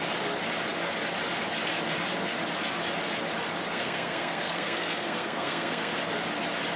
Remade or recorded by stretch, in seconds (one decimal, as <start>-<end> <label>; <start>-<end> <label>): 0.0-3.7 recorded; 3.7-5.9 remade; 5.9-6.8 recorded